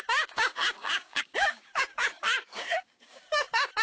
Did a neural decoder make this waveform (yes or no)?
yes